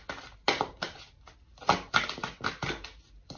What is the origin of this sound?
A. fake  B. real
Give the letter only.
B